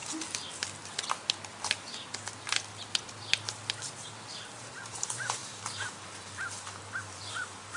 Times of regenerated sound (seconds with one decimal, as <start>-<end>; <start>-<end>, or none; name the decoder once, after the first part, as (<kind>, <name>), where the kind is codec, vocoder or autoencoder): 4.6-7.8 (vocoder, BigVGAN v2)